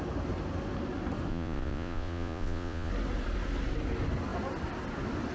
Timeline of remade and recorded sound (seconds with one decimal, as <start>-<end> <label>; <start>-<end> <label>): 0.0-1.3 recorded; 1.3-2.9 remade; 2.9-5.3 recorded